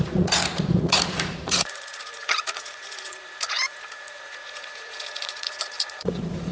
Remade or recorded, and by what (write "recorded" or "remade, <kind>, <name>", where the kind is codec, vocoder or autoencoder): remade, vocoder, Vocos